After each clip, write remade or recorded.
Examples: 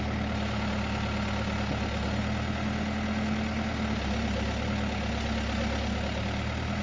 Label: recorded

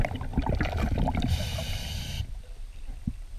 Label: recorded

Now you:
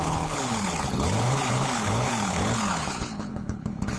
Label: remade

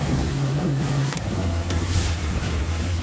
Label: remade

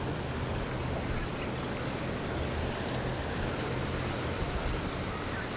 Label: recorded